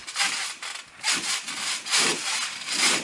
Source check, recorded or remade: recorded